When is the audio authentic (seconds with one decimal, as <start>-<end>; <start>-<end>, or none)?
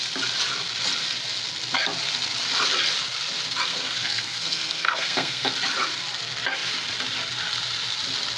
0.0-3.7; 5.5-8.4